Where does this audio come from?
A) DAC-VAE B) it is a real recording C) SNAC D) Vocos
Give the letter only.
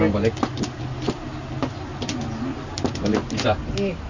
B